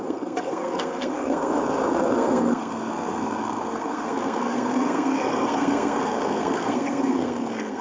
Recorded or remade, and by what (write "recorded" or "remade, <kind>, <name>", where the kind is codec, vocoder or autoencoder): remade, codec, SNAC